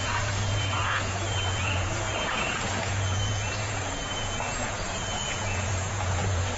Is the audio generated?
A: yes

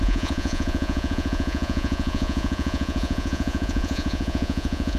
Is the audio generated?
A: yes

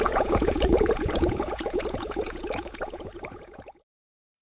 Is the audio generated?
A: yes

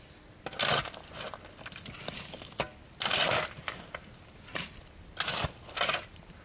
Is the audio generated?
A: no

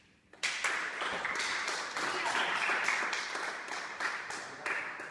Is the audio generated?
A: no